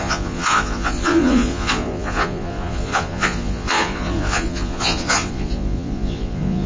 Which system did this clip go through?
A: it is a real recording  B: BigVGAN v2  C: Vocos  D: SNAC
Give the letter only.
C